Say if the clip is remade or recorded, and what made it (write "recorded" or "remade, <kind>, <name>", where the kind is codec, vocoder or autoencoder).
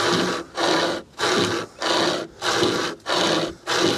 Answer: recorded